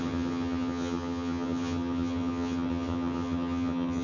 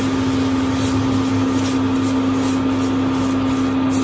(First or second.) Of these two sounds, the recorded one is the second